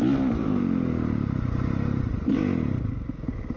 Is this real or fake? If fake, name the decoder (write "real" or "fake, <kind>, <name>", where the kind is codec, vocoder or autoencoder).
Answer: real